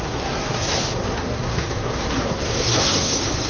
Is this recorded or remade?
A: remade